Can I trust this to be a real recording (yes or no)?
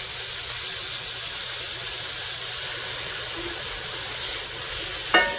yes